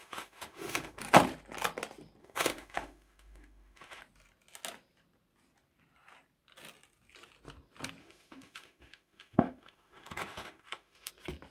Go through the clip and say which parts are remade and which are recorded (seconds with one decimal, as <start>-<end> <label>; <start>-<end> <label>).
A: 0.0-1.0 remade; 1.0-2.2 recorded; 2.2-4.0 remade; 4.0-8.0 recorded; 8.0-11.1 remade; 11.1-11.5 recorded